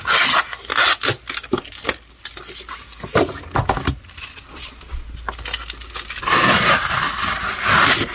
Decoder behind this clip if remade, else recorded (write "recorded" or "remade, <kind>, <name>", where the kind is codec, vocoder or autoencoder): recorded